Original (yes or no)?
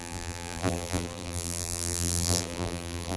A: no